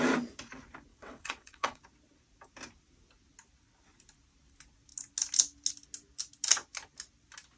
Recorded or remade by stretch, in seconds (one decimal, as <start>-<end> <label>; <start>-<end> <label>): 0.0-0.9 recorded; 0.9-1.8 remade; 1.8-7.6 recorded